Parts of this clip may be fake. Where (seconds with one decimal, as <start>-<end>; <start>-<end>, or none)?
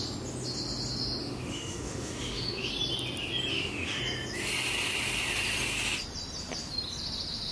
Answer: 1.2-2.7; 3.5-4.0